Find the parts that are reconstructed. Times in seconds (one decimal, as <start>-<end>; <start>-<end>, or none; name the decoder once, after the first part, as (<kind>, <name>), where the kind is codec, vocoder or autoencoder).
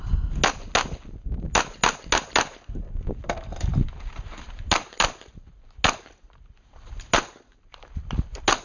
none